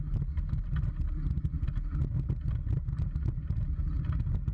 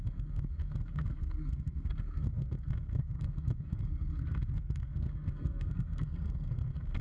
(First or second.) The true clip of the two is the first